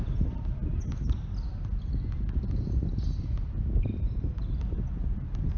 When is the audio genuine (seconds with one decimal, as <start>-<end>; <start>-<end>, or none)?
0.0-5.6